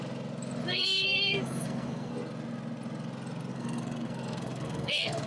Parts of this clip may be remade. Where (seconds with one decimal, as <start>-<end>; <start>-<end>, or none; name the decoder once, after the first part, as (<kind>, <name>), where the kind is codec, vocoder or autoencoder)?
0.7-2.1 (codec, SNAC); 3.5-5.3